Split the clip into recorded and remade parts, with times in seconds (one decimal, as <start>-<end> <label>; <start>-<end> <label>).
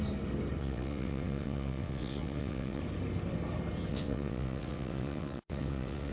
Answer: 0.0-0.6 recorded; 0.6-2.8 remade; 2.8-3.9 recorded; 3.9-6.1 remade